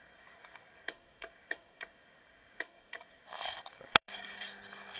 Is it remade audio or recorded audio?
remade